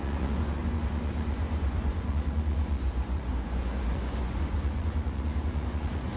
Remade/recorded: remade